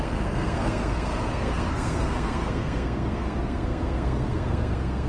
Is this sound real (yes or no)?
no